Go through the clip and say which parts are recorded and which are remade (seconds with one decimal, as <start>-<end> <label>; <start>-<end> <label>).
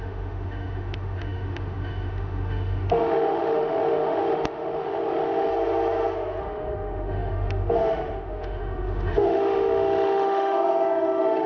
0.0-5.5 remade; 5.5-6.4 recorded; 6.4-11.5 remade